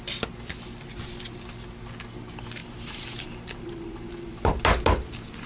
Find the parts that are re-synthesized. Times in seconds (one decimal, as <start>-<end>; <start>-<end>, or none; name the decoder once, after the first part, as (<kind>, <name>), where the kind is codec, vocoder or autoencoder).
2.6-4.6 (vocoder, BigVGAN v2)